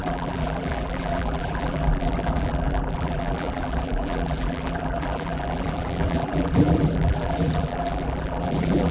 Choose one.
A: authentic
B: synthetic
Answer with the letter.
B